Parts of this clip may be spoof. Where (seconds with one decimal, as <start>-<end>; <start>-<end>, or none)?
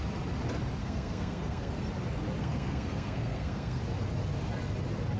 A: 0.8-1.7; 2.4-3.8